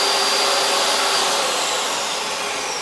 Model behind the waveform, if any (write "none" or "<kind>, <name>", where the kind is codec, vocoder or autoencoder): none